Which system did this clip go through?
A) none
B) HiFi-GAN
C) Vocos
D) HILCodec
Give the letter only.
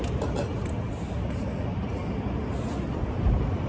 A